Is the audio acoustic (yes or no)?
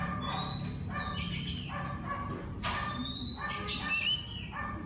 yes